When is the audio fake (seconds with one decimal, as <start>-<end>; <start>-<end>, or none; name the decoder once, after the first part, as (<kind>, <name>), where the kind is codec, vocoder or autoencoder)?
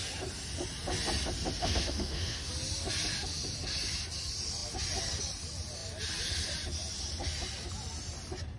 1.6-2.5 (autoencoder, DAC-VAE)